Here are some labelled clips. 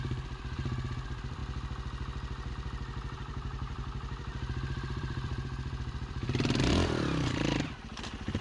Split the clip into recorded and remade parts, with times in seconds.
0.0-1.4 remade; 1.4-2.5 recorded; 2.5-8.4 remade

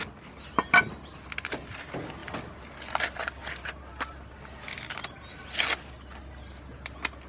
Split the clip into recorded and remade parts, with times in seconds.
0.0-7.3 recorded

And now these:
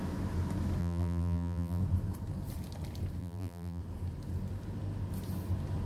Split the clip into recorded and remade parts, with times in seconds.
0.0-0.8 recorded; 0.8-1.8 remade; 1.8-3.2 recorded; 3.2-3.8 remade; 3.8-5.9 recorded

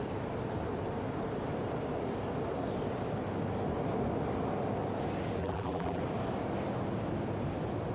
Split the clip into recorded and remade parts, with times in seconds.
0.0-5.4 recorded; 5.4-6.0 remade; 6.0-7.9 recorded